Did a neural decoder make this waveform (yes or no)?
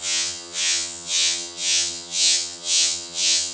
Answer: yes